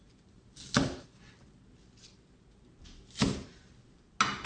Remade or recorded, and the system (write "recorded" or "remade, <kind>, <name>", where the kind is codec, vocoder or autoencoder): recorded